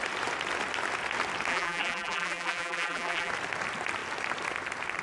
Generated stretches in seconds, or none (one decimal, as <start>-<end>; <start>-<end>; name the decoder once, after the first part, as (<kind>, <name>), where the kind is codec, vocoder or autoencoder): 1.5-3.3 (vocoder, BigVGAN v2)